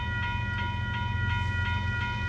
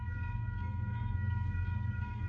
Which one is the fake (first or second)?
second